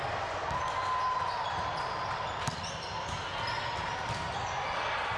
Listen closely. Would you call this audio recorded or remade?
recorded